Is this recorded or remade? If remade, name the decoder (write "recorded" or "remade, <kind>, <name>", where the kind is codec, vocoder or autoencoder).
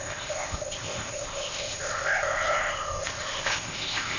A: remade, codec, ZipCodec